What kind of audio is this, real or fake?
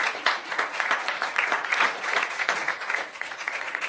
fake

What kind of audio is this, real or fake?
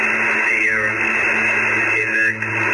real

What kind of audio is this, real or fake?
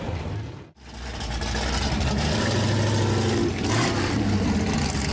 real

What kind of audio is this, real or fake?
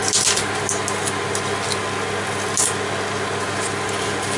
real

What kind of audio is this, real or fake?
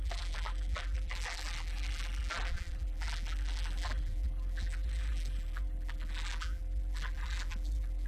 fake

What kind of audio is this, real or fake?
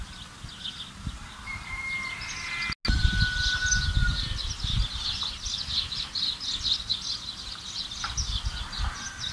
real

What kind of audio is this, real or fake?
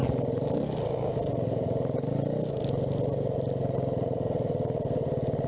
real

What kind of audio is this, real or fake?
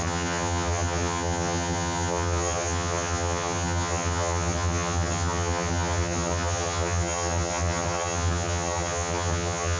fake